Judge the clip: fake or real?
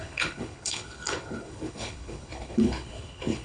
fake